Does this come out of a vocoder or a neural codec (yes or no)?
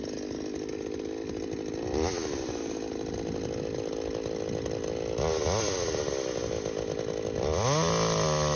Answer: no